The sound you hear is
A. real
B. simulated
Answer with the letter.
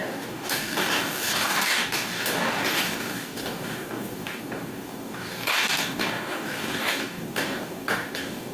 B